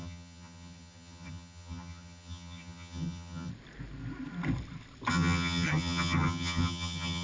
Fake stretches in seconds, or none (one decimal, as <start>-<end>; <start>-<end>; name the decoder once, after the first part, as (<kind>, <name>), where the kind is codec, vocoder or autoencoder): 0.0-3.5 (vocoder, HiFi-GAN); 5.1-7.2